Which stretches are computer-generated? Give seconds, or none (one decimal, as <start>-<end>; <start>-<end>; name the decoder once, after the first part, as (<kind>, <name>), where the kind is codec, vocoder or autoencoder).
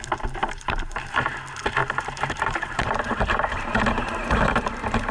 0.4-1.1 (vocoder, BigVGAN v2); 1.8-5.1